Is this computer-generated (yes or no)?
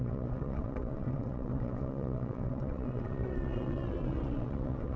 yes